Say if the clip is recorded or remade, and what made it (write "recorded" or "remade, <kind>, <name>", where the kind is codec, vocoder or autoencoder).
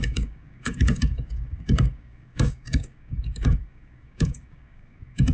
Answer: remade, codec, DAC